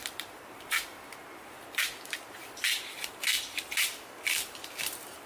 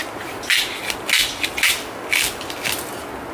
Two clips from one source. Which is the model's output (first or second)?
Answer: first